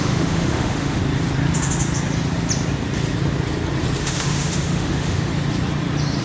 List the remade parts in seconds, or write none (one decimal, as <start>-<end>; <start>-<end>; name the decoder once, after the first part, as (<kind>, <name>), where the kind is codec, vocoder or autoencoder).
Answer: 0.0-1.0 (autoencoder, DAC-VAE); 4.0-5.3